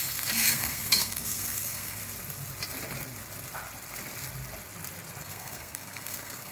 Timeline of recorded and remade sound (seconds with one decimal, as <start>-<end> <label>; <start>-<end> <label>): 0.0-2.0 remade; 2.0-5.2 recorded; 5.2-6.5 remade